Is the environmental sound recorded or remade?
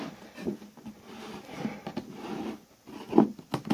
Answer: recorded